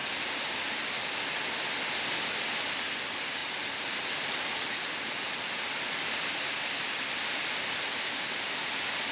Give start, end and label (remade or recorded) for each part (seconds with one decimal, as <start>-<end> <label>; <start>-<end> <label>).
0.0-0.8 remade; 0.8-9.1 recorded